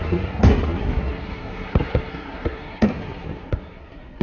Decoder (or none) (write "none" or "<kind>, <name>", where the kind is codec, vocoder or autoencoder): codec, SNAC